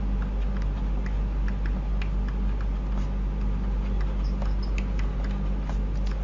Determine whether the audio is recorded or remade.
recorded